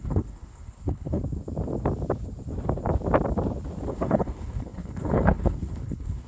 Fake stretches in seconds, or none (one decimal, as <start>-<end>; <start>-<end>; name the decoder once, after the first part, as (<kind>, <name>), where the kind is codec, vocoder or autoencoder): 0.0-1.2 (codec, HILCodec); 3.9-6.3

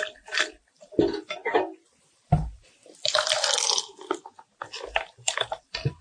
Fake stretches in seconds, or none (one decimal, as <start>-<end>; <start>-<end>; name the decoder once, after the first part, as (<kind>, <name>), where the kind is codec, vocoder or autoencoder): 0.0-1.4 (vocoder, BigVGAN v2); 2.0-2.8; 4.6-6.0